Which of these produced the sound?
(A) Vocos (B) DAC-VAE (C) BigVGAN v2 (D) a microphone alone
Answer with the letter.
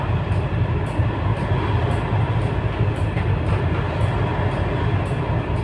D